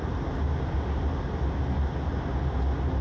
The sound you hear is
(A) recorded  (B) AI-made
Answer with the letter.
A